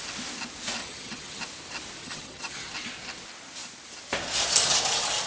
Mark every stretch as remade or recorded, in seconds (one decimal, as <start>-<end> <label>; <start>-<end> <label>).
0.0-0.8 recorded; 0.8-1.4 remade; 1.4-2.0 recorded; 2.0-2.7 remade; 2.7-5.3 recorded